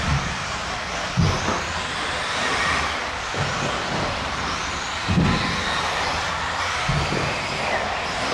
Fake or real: real